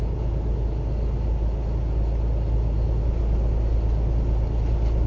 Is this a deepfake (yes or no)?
no